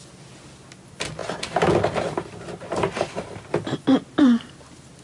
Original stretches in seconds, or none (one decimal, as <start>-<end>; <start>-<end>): 0.0-5.0